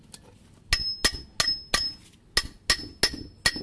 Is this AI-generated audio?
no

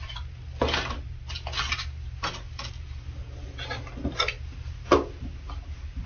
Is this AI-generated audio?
no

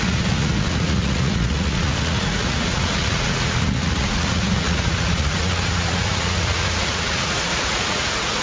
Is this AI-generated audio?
yes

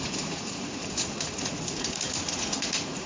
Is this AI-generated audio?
yes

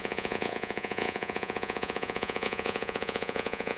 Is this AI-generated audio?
yes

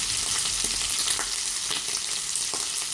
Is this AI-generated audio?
no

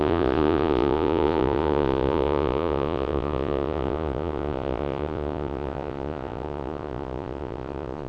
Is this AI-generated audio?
yes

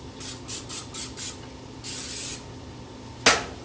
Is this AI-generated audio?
no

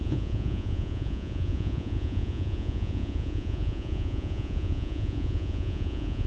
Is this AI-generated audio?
yes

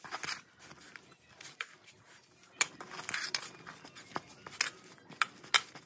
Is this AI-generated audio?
no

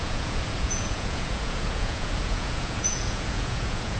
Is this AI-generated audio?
yes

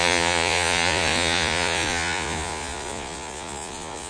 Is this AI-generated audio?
yes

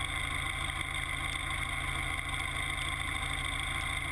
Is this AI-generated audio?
no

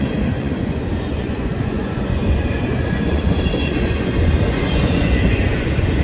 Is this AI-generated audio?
yes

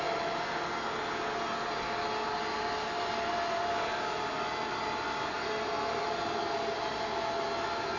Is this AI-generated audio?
no